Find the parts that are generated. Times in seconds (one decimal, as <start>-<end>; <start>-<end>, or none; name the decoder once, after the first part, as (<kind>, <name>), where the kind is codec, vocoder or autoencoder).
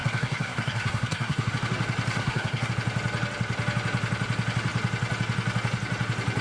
0.0-1.5 (codec, SNAC); 2.2-2.7